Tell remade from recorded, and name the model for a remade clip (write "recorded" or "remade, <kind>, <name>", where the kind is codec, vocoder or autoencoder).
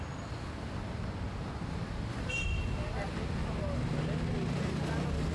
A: recorded